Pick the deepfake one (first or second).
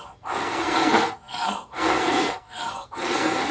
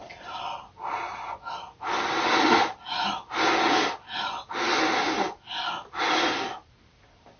first